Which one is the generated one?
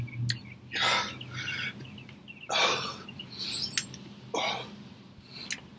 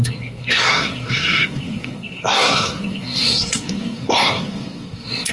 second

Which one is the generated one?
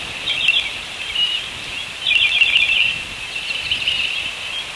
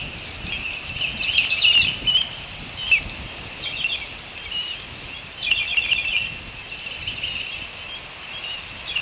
first